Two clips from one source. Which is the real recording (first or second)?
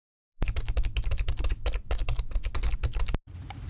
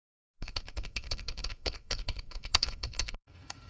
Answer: first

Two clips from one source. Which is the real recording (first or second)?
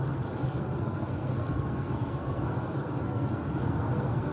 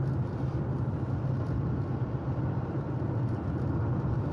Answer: second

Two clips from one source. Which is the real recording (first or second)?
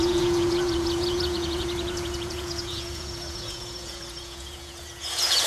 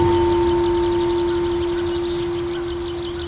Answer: second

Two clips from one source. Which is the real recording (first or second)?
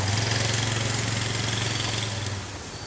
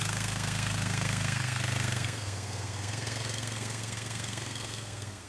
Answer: first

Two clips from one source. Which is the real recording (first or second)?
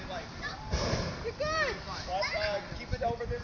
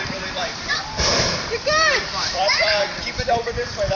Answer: first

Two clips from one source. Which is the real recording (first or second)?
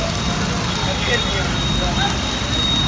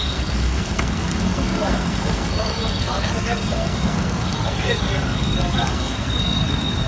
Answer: first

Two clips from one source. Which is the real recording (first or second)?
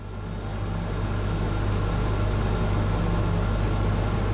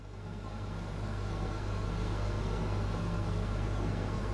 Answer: first